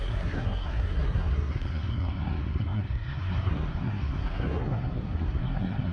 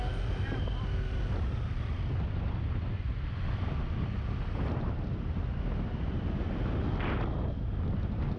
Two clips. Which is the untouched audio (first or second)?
second